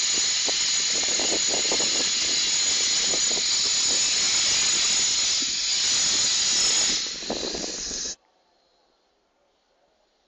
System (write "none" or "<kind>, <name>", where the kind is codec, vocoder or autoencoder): none